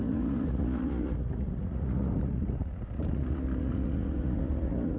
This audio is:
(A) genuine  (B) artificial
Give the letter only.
B